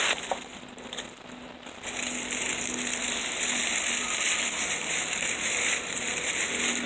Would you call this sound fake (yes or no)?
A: yes